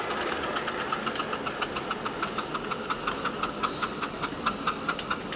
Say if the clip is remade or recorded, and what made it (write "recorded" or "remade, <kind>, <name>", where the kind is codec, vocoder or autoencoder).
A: recorded